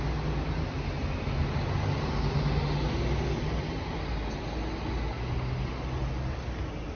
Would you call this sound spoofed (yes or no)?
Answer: no